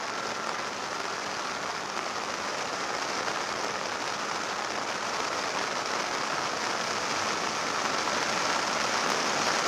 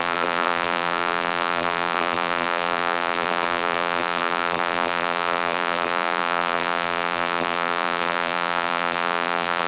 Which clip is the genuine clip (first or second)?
first